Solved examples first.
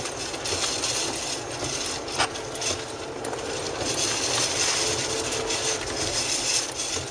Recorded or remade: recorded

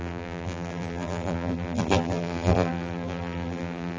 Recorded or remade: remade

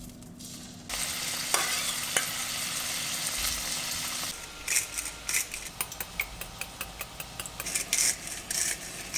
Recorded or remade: recorded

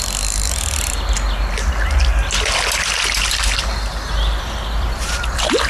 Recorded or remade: recorded